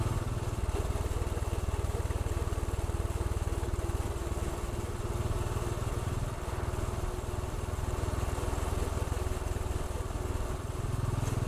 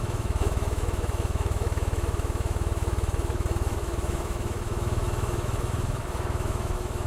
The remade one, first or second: second